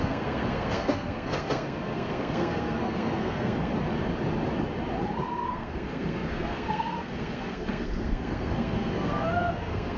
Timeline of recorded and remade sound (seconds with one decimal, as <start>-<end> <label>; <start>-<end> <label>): 0.0-3.7 remade; 3.7-5.3 recorded; 5.3-10.0 remade